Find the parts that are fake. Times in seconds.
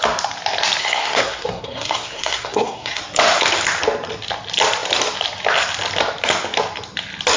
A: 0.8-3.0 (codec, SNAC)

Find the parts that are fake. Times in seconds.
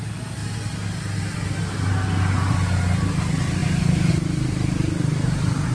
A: none